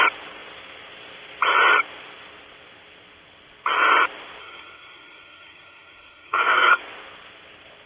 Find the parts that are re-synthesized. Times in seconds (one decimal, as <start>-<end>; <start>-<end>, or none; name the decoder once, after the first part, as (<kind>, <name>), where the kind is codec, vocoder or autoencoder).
4.4-6.8 (codec, SNAC)

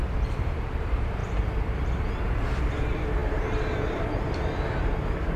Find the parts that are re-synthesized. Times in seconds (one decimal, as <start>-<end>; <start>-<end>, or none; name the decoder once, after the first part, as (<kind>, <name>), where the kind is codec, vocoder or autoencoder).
0.0-1.2 (vocoder, BigVGAN v2); 2.5-5.4